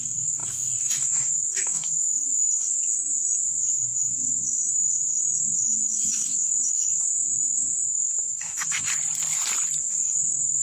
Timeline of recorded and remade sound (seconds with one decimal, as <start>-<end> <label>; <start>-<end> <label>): 0.0-8.9 remade; 8.9-9.8 recorded; 9.8-10.6 remade